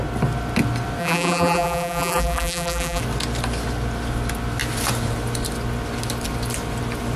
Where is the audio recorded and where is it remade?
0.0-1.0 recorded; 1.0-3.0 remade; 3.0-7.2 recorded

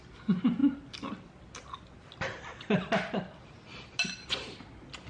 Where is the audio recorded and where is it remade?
0.0-5.1 recorded

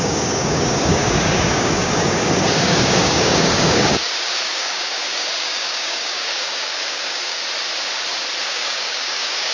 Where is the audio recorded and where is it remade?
0.0-7.4 remade; 7.4-8.4 recorded; 8.4-9.5 remade

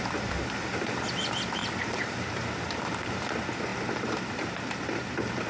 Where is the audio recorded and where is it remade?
0.0-1.6 recorded; 1.6-3.0 remade; 3.0-5.5 recorded

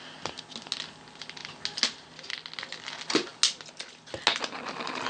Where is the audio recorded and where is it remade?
0.0-5.1 recorded